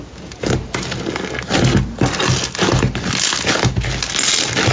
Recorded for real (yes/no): yes